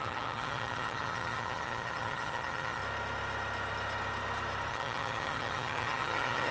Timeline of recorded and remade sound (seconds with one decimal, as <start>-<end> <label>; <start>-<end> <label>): 0.0-2.8 remade; 2.8-4.7 recorded; 4.7-6.5 remade